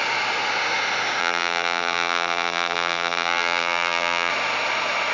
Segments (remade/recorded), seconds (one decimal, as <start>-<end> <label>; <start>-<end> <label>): 0.0-1.2 recorded; 1.2-4.3 remade; 4.3-5.1 recorded